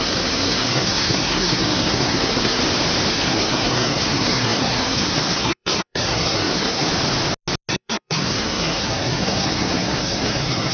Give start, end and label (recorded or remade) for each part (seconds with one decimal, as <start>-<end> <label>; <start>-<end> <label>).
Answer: 0.0-2.6 remade; 2.6-3.1 recorded; 3.1-6.9 remade; 6.9-7.7 recorded; 7.7-10.7 remade